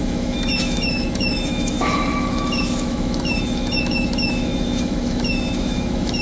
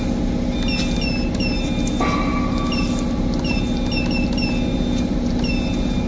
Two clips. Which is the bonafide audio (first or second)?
second